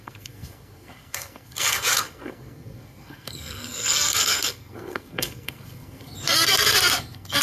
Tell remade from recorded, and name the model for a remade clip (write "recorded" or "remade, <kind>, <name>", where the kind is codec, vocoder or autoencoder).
remade, codec, SNAC